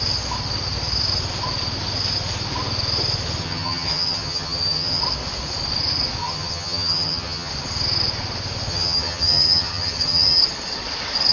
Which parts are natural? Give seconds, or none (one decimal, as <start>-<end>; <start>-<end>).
0.0-3.4; 5.0-6.2; 7.5-8.7; 10.4-11.3